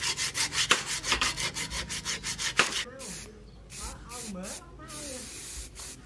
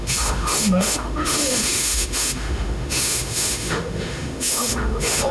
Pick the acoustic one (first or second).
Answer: first